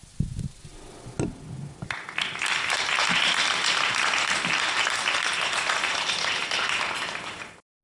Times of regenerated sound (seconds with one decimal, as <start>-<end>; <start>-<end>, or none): none